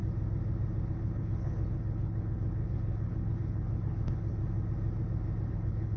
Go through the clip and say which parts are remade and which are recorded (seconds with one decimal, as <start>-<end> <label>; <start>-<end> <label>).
0.0-0.9 recorded; 0.9-4.4 remade; 4.4-5.5 recorded; 5.5-6.0 remade

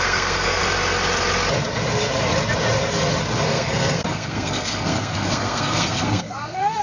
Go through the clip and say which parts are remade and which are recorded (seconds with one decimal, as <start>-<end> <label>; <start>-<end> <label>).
0.0-0.6 remade; 0.6-3.4 recorded; 3.4-6.8 remade

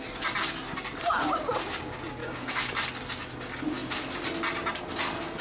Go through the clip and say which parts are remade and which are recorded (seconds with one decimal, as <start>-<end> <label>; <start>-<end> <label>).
0.0-2.2 recorded; 2.2-2.8 remade; 2.8-5.4 recorded

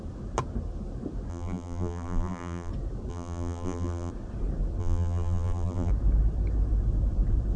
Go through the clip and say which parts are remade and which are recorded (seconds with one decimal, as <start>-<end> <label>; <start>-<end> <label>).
0.0-1.3 recorded; 1.3-2.7 remade; 2.7-3.1 recorded; 3.1-4.1 remade; 4.1-4.8 recorded; 4.8-5.9 remade; 5.9-7.6 recorded